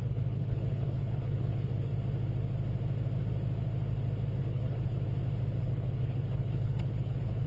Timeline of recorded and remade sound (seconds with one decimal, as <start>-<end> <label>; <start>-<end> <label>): 0.0-1.9 remade; 1.9-4.4 recorded; 4.4-4.9 remade; 4.9-5.6 recorded; 5.6-7.5 remade